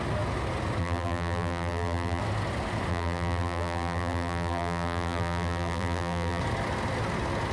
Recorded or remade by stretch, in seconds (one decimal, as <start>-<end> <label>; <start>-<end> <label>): 0.0-0.8 recorded; 0.8-2.2 remade; 2.2-2.9 recorded; 2.9-6.4 remade; 6.4-7.5 recorded